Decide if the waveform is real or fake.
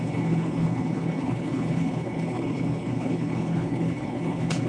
fake